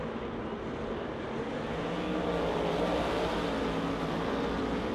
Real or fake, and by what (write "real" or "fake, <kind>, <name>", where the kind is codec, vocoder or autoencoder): real